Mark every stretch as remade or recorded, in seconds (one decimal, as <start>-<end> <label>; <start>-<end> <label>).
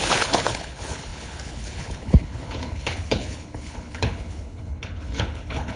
0.0-5.8 remade